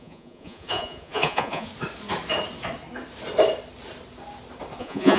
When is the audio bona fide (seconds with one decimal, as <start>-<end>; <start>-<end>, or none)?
1.7-4.8